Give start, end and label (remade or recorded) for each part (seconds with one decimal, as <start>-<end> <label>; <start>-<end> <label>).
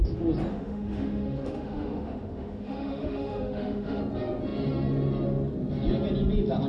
0.0-0.5 recorded; 0.5-4.0 remade; 4.0-6.7 recorded